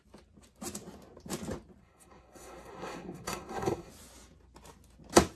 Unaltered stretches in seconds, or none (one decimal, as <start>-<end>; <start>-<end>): 0.0-1.8; 3.9-5.4